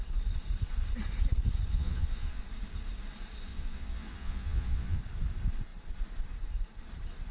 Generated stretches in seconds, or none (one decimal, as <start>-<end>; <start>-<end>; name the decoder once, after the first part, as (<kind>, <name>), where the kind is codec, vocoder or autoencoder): 1.7-2.4 (vocoder, Vocos); 3.5-5.0